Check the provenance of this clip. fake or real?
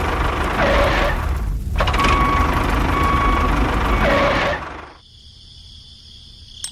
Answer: real